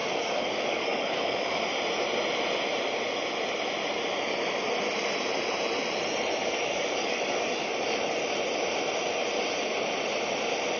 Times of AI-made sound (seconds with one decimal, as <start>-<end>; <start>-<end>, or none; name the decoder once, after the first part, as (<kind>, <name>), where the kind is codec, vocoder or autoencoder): 0.0-1.6 (codec, DAC); 6.4-7.7